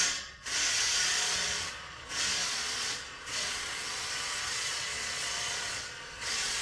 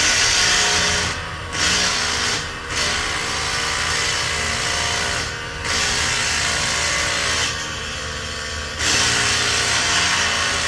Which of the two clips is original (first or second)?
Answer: second